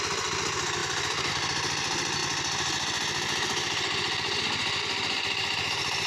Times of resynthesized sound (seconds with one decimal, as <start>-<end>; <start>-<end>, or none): none